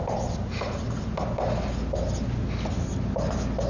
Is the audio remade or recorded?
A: recorded